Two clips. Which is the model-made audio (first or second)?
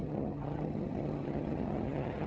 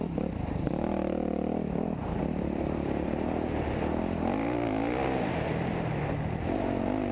first